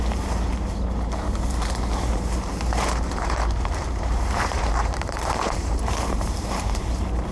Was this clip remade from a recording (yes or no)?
yes